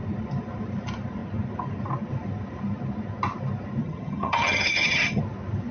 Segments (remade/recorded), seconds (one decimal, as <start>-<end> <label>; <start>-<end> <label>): 0.0-3.8 recorded; 3.8-5.2 remade; 5.2-5.7 recorded

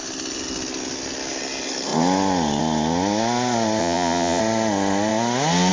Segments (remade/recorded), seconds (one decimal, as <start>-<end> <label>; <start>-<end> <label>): 0.0-3.8 recorded; 3.8-4.4 remade; 4.4-5.7 recorded